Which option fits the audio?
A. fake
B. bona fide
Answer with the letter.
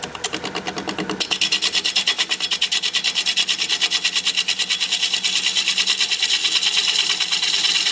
B